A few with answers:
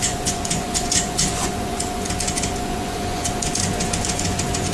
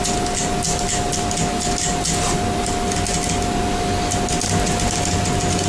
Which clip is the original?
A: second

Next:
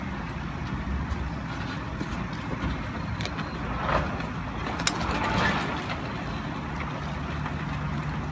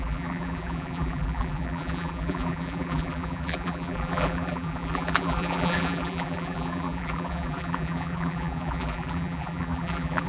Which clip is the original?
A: first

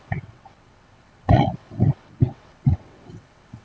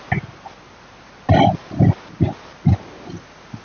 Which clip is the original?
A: second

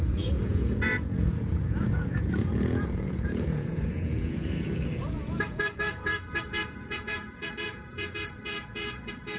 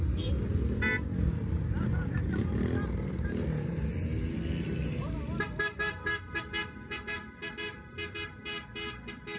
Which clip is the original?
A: second